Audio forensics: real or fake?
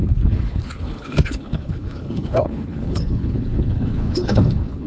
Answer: fake